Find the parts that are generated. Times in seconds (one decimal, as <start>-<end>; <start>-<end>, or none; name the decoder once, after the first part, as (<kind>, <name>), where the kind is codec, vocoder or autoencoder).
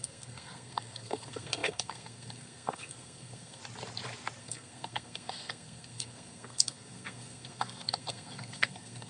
0.0-3.6 (codec, SNAC); 4.4-9.1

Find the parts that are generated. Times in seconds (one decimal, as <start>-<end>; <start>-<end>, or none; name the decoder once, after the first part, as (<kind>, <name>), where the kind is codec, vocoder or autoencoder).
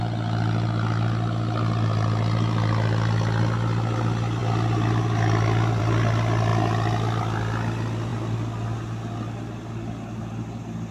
none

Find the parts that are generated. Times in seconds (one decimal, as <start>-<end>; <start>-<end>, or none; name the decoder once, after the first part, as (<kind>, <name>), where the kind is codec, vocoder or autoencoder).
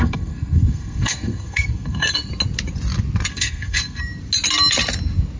0.0-2.3 (codec, SNAC); 3.3-4.0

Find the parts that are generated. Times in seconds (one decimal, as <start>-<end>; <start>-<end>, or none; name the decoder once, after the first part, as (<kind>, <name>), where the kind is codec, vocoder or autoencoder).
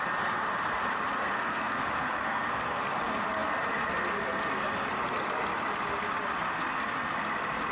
1.2-1.8 (codec, SNAC); 2.2-2.8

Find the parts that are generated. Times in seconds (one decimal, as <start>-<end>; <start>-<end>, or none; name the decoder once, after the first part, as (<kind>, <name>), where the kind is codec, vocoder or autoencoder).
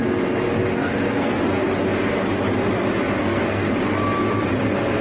0.8-1.4 (codec, SNAC); 3.2-3.7